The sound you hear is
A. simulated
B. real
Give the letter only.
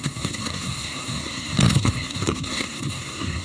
A